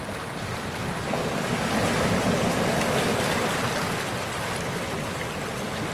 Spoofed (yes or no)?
no